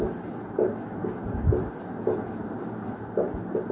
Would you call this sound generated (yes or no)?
no